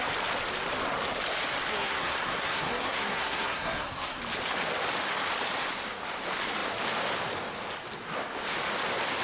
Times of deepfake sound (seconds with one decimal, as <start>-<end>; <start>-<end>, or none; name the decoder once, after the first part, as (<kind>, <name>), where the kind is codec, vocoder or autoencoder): 1.7-4.2 (codec, SNAC)